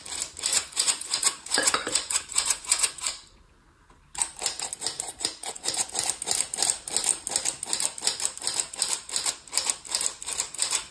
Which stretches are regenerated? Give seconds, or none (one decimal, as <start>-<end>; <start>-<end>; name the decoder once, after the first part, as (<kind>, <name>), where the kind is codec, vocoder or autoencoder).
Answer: 0.5-3.1 (vocoder, Vocos); 5.4-5.9